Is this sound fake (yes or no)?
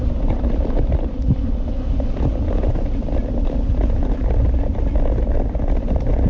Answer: no